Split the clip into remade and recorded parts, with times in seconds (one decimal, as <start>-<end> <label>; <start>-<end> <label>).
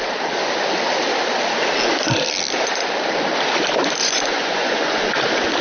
0.0-4.0 recorded; 4.0-5.1 remade; 5.1-5.6 recorded